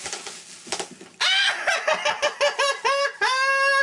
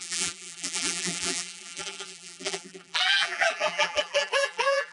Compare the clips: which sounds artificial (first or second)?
second